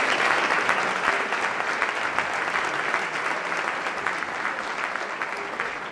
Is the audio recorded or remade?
recorded